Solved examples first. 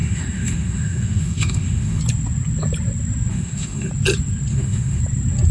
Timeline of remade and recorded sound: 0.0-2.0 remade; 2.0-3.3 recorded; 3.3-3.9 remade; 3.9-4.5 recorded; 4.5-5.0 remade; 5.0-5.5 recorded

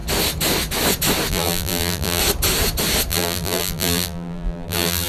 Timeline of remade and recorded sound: 0.0-1.3 recorded; 1.3-2.2 remade; 2.2-3.1 recorded; 3.1-5.1 remade

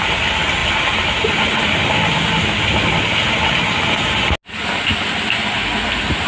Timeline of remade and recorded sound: 0.0-6.3 recorded